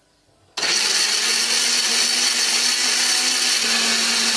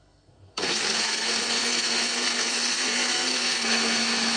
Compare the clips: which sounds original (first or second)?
first